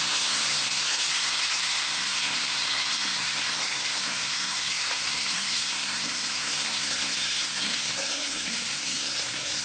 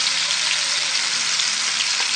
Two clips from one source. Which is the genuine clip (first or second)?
second